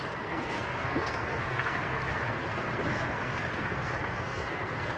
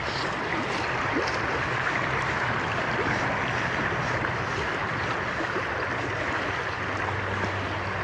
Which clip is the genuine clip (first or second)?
second